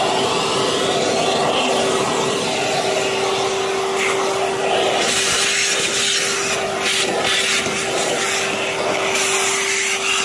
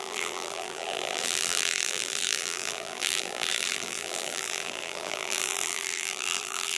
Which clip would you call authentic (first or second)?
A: first